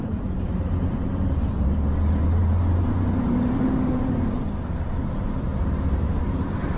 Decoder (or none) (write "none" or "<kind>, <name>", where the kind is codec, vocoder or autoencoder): vocoder, BigVGAN v2